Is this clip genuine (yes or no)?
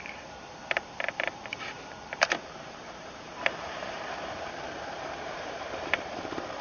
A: no